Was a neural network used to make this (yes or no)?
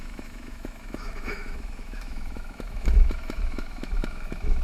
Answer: yes